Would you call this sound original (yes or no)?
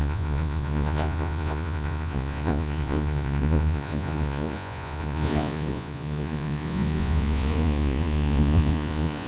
no